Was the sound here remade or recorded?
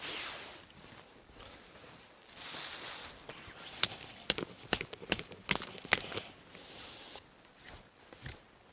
recorded